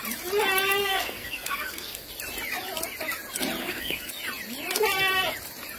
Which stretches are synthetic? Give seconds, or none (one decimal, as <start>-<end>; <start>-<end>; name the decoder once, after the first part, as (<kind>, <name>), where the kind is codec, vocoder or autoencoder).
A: 0.8-2.1 (codec, SNAC); 3.6-4.1